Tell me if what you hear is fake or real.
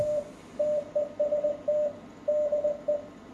real